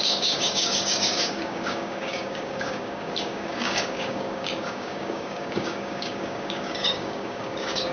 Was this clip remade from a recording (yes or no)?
yes